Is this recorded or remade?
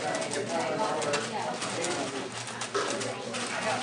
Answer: recorded